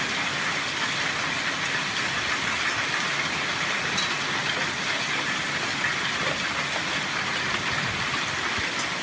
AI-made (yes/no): no